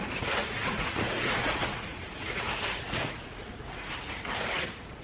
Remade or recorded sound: remade